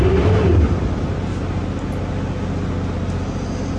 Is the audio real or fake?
real